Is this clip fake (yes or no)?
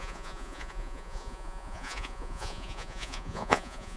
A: yes